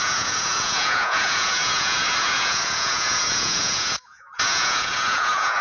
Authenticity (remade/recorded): remade